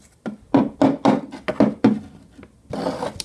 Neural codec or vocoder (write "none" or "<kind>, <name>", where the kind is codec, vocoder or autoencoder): none